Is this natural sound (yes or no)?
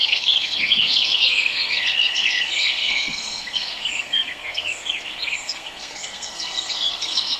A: no